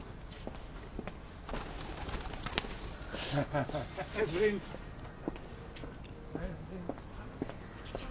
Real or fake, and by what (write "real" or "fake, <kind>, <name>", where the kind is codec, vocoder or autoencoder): real